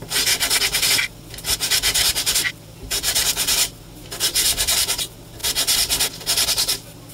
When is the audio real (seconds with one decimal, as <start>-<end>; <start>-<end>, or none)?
0.0-7.1